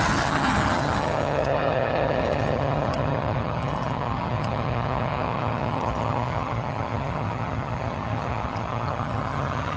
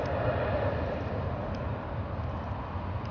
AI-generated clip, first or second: first